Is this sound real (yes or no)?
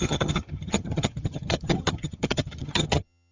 no